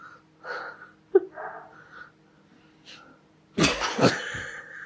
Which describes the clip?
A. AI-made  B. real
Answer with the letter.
B